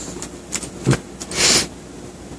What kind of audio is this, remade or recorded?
recorded